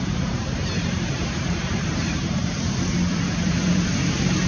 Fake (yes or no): yes